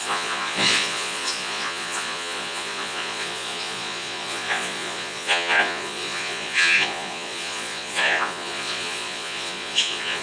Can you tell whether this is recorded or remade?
remade